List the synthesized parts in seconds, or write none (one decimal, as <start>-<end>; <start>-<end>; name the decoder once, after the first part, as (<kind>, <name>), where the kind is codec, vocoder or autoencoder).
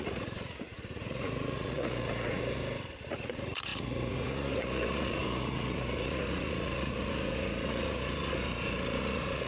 0.0-2.6 (vocoder, Vocos); 3.1-9.5